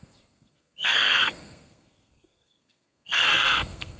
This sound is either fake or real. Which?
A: fake